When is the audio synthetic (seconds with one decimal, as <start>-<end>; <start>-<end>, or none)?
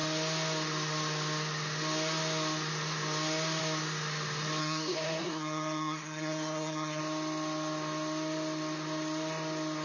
4.6-7.0